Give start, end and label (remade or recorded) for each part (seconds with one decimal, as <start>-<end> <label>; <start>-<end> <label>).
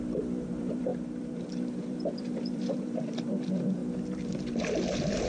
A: 0.0-5.3 remade